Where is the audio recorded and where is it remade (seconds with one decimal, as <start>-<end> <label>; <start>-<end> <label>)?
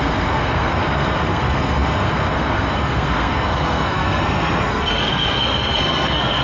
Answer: 0.0-6.4 remade